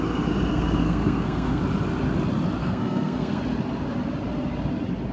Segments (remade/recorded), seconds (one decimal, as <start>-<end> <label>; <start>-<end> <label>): 0.0-0.5 recorded; 0.5-1.6 remade; 1.6-2.6 recorded; 2.6-3.4 remade; 3.4-5.1 recorded